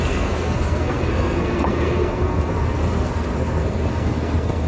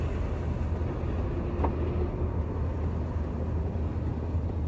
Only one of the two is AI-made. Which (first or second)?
first